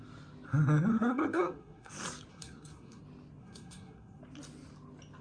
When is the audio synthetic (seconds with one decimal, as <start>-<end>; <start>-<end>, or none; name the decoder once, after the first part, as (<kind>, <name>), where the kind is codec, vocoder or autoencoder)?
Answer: 0.9-1.9 (codec, SNAC); 2.3-3.0; 3.4-4.2